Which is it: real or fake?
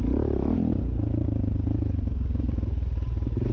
real